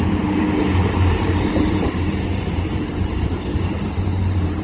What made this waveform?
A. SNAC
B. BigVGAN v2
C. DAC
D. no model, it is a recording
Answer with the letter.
B